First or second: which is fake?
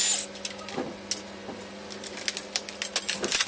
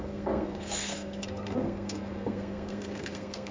second